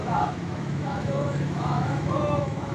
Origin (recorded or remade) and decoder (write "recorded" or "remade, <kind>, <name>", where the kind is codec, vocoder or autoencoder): remade, autoencoder, DAC-VAE